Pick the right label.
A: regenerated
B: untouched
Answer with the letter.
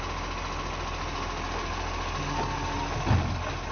B